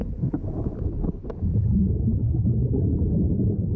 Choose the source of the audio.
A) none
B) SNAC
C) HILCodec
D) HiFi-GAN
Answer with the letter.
A